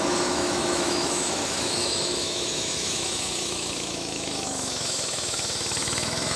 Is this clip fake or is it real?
fake